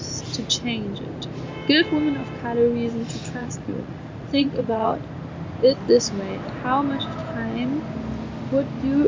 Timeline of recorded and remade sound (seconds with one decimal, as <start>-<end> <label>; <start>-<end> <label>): 0.0-3.4 recorded; 3.4-5.0 remade; 5.0-9.1 recorded